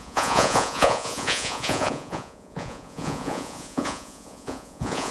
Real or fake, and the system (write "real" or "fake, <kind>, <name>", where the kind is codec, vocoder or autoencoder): fake, vocoder, Vocos